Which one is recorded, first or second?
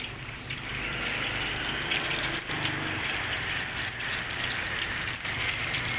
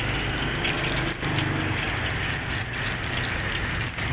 second